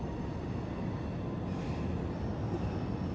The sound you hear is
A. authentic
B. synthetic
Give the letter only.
A